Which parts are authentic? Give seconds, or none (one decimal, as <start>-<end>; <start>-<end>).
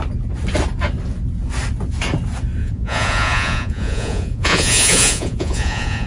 0.0-2.6